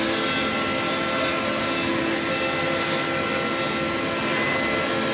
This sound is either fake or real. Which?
real